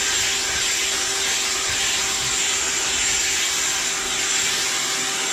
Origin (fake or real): real